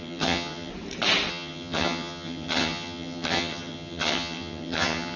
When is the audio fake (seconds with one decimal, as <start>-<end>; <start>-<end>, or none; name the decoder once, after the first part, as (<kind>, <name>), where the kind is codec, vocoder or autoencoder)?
0.0-0.7 (vocoder, HiFi-GAN); 1.3-5.2